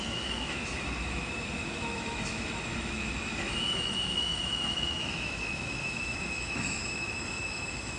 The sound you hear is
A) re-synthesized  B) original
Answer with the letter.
A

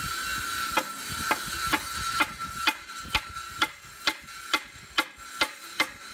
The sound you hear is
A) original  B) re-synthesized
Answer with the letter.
A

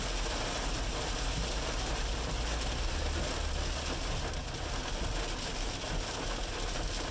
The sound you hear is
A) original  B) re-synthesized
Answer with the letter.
A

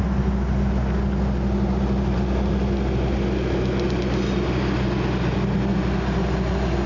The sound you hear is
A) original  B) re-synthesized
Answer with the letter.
A